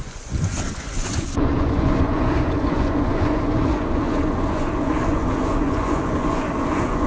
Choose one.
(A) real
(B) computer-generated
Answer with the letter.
B